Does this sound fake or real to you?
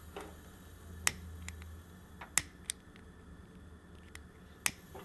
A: real